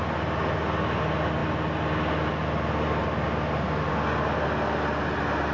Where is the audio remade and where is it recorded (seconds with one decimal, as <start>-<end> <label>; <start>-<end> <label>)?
0.0-5.5 recorded